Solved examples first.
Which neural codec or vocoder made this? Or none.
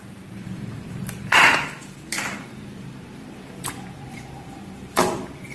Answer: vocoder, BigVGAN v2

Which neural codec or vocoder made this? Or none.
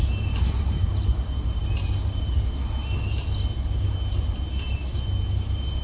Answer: none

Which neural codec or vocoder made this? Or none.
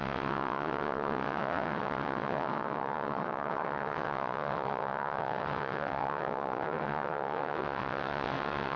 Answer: vocoder, WaveNeXt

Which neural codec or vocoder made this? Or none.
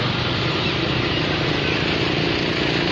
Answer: none